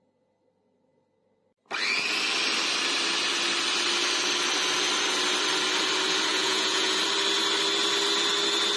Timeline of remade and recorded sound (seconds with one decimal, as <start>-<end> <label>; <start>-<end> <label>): 0.0-6.3 recorded; 6.3-7.0 remade; 7.0-8.8 recorded